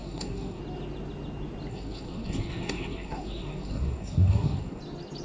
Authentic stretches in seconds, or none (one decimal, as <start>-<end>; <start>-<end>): 0.6-1.7; 4.8-5.2